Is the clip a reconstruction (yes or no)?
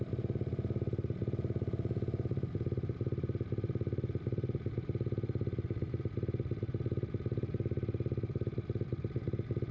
no